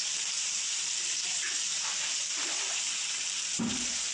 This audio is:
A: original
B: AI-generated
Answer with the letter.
B